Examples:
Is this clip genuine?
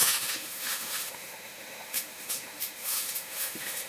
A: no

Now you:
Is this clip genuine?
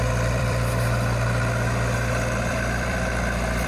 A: no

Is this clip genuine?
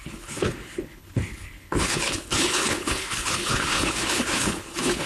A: no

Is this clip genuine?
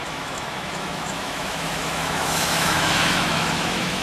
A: no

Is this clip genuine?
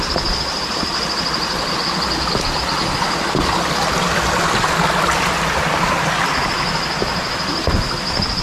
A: yes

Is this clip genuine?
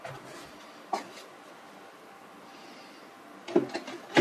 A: yes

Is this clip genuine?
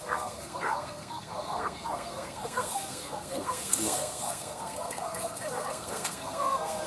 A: no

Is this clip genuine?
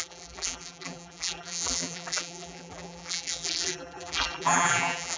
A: no